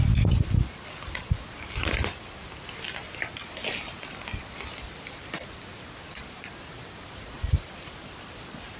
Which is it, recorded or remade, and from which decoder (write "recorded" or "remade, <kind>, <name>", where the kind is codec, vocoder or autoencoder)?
recorded